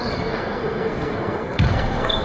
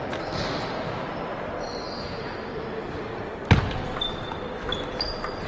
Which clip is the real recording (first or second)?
second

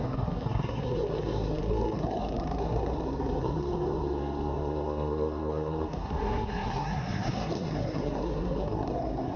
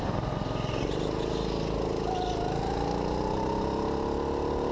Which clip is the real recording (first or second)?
second